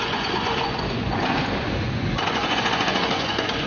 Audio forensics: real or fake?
fake